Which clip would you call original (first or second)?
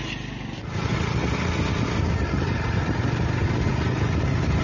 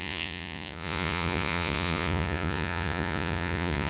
first